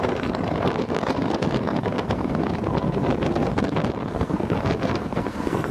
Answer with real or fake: fake